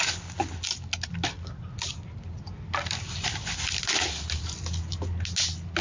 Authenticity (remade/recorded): recorded